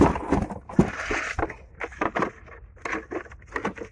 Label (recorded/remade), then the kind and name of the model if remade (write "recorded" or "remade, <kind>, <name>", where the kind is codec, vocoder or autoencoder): recorded